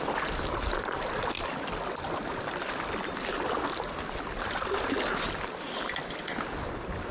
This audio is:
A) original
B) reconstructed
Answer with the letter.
A